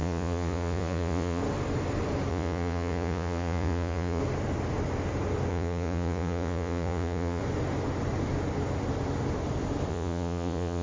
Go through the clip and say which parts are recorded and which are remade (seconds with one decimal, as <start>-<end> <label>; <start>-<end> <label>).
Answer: 0.0-1.4 remade; 1.4-2.3 recorded; 2.3-4.2 remade; 4.2-5.5 recorded; 5.5-7.4 remade; 7.4-9.9 recorded; 9.9-10.8 remade